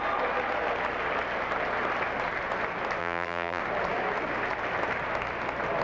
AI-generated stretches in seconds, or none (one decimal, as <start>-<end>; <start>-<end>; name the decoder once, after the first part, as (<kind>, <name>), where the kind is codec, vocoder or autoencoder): 3.0-3.6 (vocoder, BigVGAN v2)